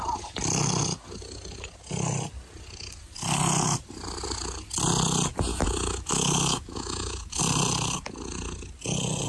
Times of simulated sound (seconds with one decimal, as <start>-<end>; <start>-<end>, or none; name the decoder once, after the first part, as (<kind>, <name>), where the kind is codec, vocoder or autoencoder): 5.5-7.4 (autoencoder, DAC-VAE)